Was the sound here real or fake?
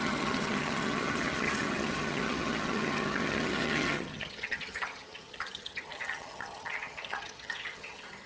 fake